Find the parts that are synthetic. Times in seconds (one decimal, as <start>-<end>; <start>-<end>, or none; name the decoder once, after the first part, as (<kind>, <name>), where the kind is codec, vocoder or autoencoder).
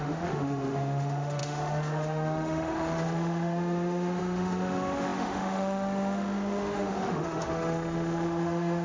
0.0-8.8 (autoencoder, DAC-VAE)